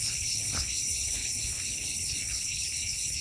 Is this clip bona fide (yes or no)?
no